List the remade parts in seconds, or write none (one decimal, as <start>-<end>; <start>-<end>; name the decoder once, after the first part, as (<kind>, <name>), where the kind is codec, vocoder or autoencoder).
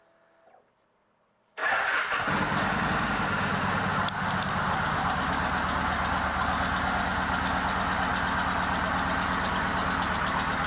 1.6-4.5 (vocoder, BigVGAN v2); 8.1-9.6